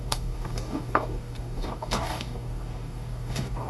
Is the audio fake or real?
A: fake